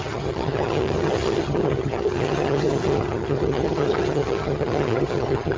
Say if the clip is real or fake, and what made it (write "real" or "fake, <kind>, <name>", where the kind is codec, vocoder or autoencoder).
fake, vocoder, HiFi-GAN